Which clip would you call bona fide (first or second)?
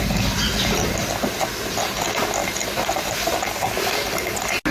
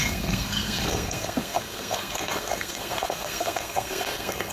first